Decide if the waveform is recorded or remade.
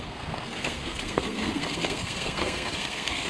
remade